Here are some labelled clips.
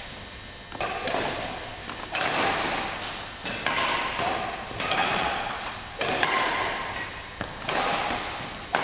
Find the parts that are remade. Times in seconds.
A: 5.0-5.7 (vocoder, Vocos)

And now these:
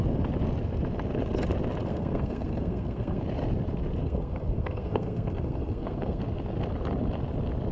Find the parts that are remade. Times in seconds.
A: 1.9-3.2 (codec, SNAC); 4.0-6.2

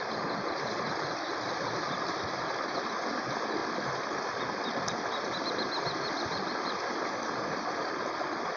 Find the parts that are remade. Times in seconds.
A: none

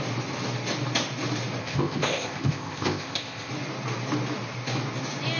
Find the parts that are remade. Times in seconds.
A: 1.6-3.5 (codec, ZipCodec)

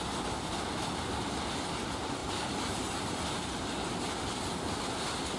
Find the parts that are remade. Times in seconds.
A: 2.2-2.9 (vocoder, BigVGAN v2)

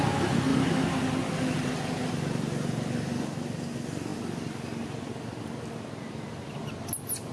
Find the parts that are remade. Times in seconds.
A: none

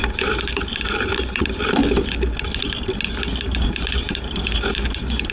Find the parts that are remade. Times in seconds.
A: 0.0-1.8 (vocoder, BigVGAN v2); 3.4-5.3